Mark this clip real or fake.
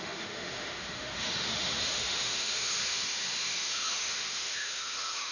fake